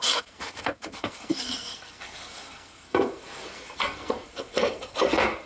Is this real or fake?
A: fake